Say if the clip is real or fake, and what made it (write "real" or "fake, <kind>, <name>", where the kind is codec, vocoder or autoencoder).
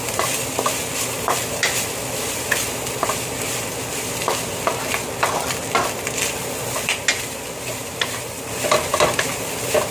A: fake, vocoder, BigVGAN v2